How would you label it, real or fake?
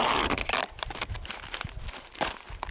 real